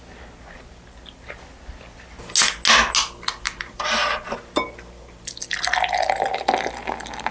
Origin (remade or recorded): recorded